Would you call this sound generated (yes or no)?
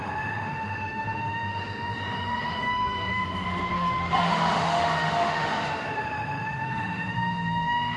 yes